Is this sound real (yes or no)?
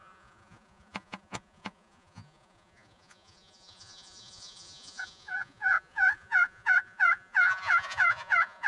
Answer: no